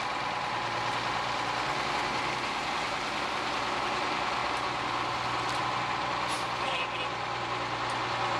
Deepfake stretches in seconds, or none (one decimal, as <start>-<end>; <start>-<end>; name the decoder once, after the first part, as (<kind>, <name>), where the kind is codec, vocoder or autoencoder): none

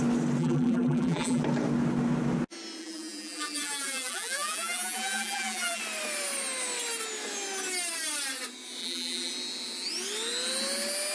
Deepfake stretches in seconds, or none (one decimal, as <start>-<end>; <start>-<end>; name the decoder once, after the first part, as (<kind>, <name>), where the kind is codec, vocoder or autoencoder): 0.4-1.4 (vocoder, BigVGAN v2); 2.8-5.8; 8.8-9.3

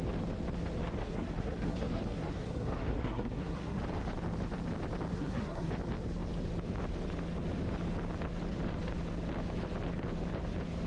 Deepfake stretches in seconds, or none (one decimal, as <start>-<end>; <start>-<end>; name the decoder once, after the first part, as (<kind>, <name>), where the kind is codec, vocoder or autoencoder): 1.0-3.8 (codec, SNAC); 5.1-5.7

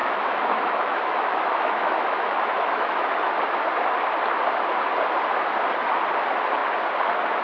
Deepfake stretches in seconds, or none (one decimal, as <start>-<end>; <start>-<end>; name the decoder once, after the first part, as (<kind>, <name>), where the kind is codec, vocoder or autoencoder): 0.0-3.3 (autoencoder, DAC-VAE)

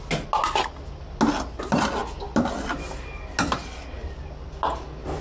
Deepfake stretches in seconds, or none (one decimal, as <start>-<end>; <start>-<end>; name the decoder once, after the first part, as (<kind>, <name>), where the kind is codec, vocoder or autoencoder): none

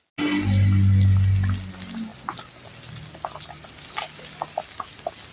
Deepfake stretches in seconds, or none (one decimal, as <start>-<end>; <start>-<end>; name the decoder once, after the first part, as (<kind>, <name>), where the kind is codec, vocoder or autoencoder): none

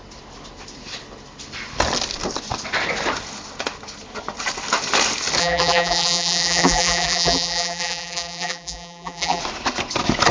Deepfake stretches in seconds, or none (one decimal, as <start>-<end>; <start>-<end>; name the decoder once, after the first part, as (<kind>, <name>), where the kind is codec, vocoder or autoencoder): 5.4-9.4 (vocoder, BigVGAN v2)

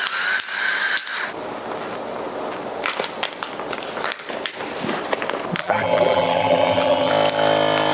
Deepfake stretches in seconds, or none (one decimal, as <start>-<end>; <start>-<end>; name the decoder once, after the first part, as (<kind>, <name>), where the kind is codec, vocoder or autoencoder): 5.6-7.1 (vocoder, BigVGAN v2)